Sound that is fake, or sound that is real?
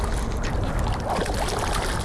real